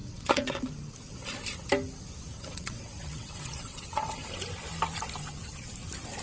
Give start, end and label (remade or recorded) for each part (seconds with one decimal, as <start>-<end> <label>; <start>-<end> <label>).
0.0-0.7 remade; 0.7-2.3 recorded; 2.3-4.0 remade; 4.0-6.2 recorded